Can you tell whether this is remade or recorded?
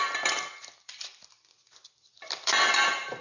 remade